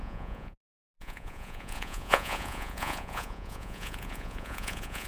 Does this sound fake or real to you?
fake